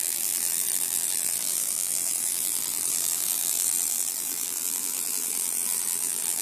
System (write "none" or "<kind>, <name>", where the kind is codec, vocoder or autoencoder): vocoder, BigVGAN v2